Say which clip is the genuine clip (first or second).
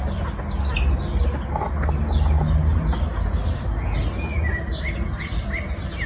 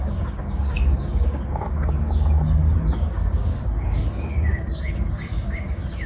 first